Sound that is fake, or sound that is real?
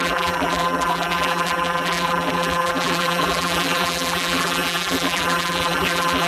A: fake